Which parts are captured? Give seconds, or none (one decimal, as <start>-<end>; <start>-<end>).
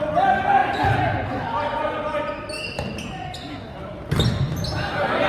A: 0.0-5.3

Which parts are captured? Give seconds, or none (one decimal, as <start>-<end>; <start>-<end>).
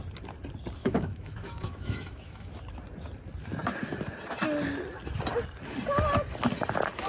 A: 0.0-0.8; 2.5-7.1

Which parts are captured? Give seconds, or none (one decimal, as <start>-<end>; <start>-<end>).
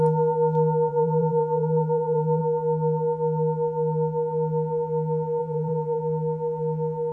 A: 0.0-0.9; 2.4-5.4; 6.0-7.1